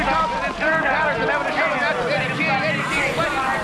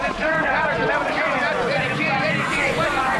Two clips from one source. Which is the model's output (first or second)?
second